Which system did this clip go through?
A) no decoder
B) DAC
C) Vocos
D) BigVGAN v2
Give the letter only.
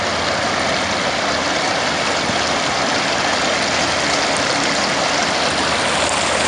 A